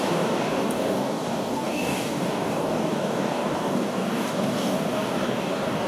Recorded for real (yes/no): no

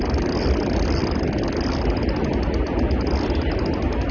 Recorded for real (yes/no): yes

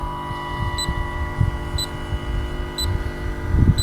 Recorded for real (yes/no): yes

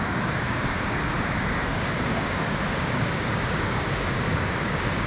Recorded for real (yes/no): no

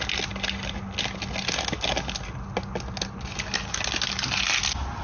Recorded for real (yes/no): yes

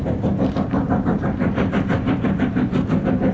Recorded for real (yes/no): yes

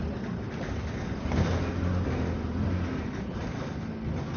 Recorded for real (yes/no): yes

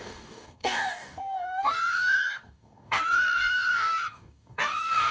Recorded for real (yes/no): no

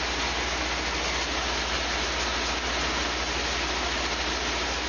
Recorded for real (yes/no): yes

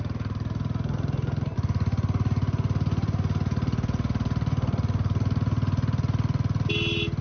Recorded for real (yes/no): yes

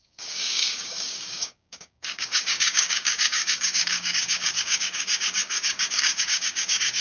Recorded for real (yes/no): no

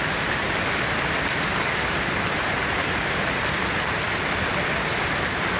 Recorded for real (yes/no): yes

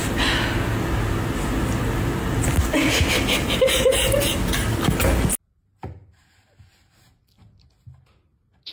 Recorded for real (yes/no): yes